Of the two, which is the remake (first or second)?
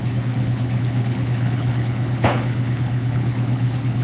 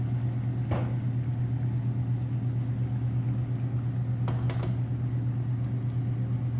first